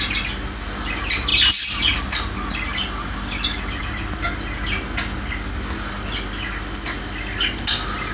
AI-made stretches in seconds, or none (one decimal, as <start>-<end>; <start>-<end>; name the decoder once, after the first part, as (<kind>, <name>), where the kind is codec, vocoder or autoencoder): none

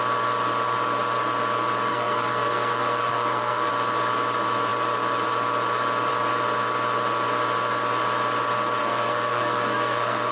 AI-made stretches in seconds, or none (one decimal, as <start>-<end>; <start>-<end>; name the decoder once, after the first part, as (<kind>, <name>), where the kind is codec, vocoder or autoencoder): 1.9-3.7 (codec, SNAC); 8.8-10.3

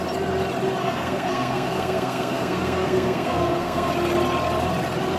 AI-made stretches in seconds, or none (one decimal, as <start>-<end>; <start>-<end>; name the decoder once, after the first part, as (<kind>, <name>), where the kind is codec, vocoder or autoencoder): 0.8-3.9 (codec, SNAC)

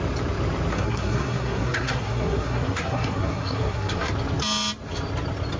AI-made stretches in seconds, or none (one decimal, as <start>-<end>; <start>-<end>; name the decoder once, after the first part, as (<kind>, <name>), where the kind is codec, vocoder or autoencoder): 0.7-4.1 (codec, SNAC)